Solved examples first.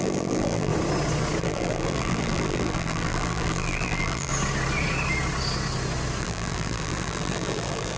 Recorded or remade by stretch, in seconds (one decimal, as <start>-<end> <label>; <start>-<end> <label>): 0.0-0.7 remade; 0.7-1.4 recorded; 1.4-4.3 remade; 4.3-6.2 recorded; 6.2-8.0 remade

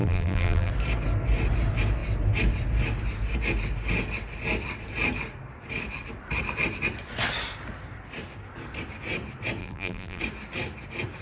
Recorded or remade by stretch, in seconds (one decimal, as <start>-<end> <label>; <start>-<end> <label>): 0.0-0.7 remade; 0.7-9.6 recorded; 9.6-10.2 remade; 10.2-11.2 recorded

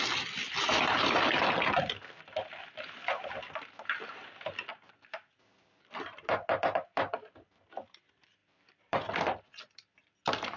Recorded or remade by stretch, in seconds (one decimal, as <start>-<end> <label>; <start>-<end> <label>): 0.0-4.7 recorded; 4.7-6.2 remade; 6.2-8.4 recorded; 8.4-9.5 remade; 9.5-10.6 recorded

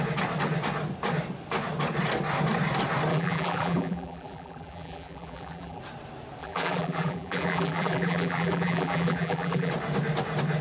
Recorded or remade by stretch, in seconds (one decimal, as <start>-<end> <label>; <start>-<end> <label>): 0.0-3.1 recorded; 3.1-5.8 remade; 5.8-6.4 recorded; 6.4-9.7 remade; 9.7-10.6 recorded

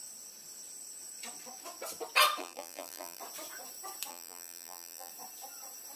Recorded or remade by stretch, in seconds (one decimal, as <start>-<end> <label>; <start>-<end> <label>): 0.0-2.4 recorded; 2.4-3.2 remade; 3.2-4.1 recorded; 4.1-5.1 remade; 5.1-6.0 recorded

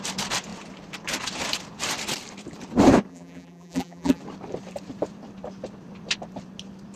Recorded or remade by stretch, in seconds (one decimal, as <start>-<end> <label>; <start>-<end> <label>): 0.0-3.1 recorded; 3.1-4.2 remade; 4.2-7.0 recorded

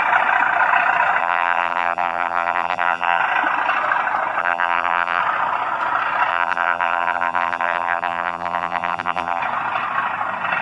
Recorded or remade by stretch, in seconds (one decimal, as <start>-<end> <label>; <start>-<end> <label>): 0.0-1.2 recorded; 1.2-3.2 remade; 3.2-4.4 recorded; 4.4-5.2 remade; 5.2-6.3 recorded; 6.3-9.4 remade; 9.4-10.6 recorded